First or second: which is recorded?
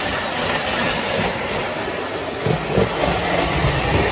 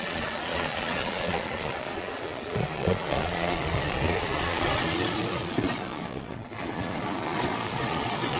first